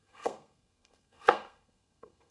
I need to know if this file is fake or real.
fake